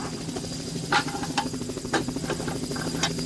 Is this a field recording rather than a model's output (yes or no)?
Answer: yes